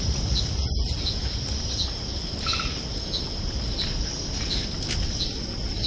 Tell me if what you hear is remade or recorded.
recorded